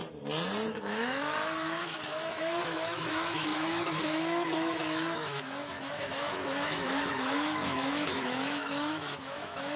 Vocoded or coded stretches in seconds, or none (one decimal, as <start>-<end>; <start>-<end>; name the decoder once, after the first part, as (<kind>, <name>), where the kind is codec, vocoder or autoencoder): 0.7-9.8 (autoencoder, DAC-VAE)

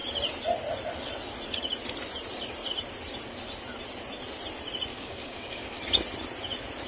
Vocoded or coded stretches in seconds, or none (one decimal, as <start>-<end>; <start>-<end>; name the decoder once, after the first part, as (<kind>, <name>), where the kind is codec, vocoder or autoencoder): 4.9-5.8 (codec, DAC)